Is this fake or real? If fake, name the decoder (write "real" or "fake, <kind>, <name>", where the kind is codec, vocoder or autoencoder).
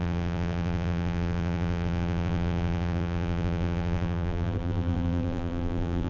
fake, vocoder, BigVGAN v2